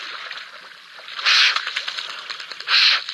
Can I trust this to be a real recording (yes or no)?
yes